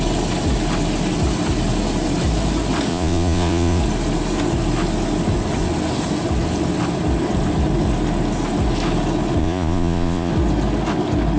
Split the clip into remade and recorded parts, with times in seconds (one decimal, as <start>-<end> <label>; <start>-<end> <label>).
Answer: 0.0-2.9 recorded; 2.9-3.8 remade; 3.8-9.4 recorded; 9.4-10.3 remade; 10.3-11.4 recorded